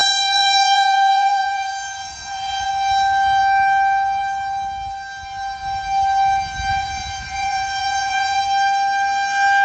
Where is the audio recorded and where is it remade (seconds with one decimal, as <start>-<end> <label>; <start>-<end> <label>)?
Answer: 0.0-2.7 remade; 2.7-6.7 recorded; 6.7-8.4 remade; 8.4-9.6 recorded